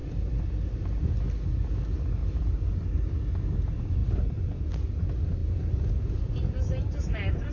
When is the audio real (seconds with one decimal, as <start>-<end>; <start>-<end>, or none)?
1.0-2.2; 2.7-7.5